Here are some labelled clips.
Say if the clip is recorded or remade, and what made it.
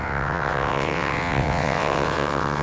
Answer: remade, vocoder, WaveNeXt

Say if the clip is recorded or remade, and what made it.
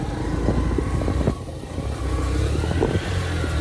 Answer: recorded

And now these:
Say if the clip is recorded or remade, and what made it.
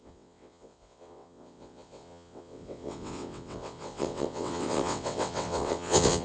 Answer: remade, vocoder, WaveNeXt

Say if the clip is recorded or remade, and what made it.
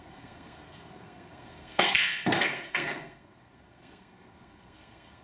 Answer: remade, codec, SNAC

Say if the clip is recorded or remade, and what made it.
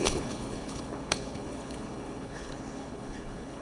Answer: remade, codec, HILCodec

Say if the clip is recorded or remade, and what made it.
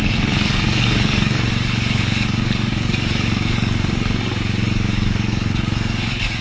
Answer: remade, codec, DAC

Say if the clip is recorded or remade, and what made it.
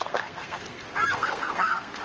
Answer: remade, codec, SNAC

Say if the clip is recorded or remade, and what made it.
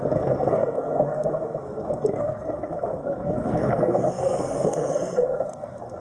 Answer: remade, codec, SNAC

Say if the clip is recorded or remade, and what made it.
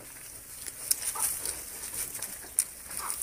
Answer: recorded